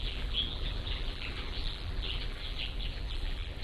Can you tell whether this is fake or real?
fake